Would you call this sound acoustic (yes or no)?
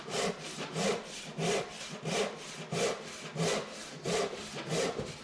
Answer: yes